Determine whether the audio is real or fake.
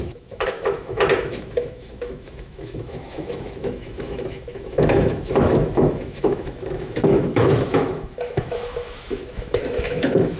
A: fake